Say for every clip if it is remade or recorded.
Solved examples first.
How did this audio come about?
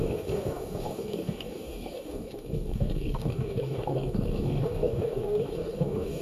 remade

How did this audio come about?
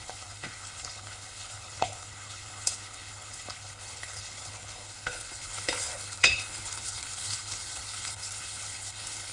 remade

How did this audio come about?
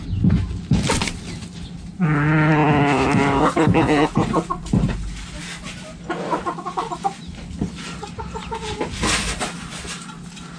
recorded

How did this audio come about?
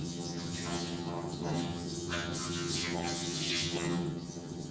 remade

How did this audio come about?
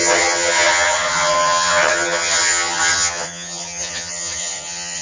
remade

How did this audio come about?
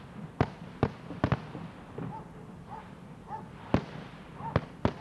recorded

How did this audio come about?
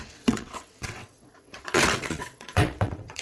remade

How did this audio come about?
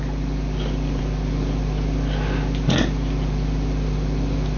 recorded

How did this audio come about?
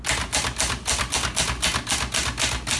recorded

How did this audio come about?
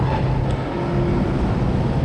recorded